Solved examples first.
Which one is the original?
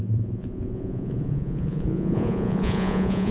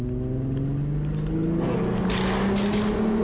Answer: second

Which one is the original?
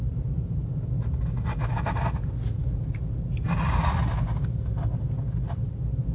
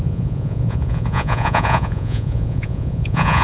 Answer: first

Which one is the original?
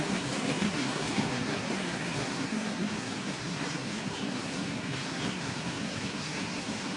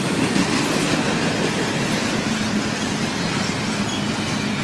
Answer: second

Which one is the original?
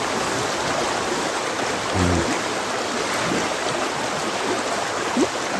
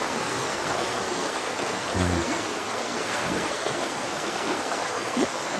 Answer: first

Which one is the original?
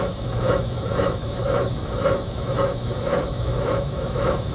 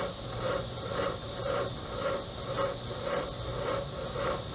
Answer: second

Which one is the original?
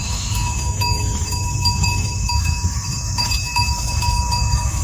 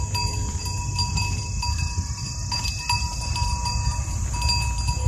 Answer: second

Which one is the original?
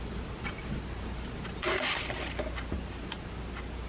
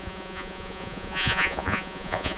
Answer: first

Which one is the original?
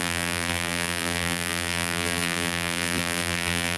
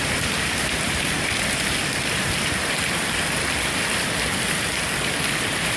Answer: second